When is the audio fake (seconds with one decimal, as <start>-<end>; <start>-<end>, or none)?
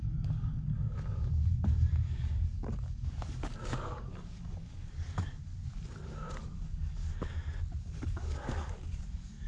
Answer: 0.0-5.5; 6.4-7.0; 7.8-9.5